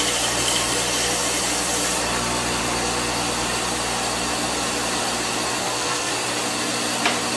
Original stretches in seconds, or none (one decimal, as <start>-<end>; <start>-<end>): 0.0-5.6; 6.1-7.4